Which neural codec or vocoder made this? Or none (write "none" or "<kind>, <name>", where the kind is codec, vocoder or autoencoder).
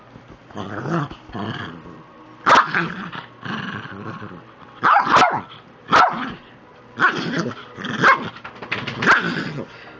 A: none